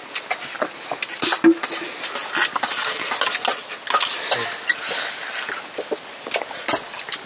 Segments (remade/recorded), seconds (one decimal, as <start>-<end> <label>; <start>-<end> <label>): 0.0-7.3 recorded